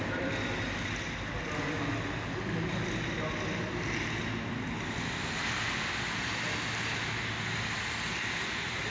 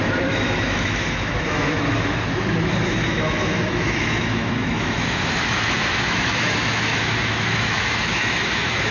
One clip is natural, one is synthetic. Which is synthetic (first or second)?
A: second